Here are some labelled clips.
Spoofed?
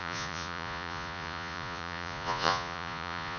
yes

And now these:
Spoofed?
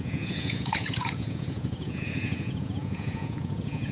yes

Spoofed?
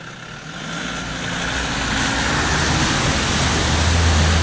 no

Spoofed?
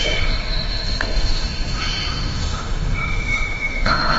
yes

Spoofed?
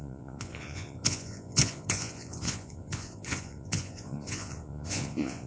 yes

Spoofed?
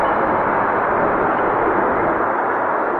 no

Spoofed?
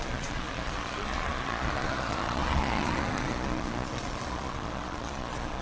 yes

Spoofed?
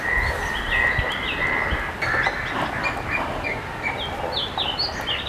no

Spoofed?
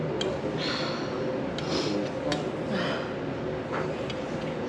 no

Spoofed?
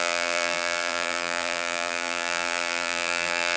yes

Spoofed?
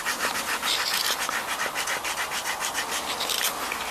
no